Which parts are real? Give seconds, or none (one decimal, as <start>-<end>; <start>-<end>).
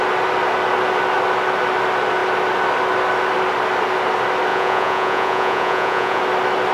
0.0-4.5; 6.2-6.7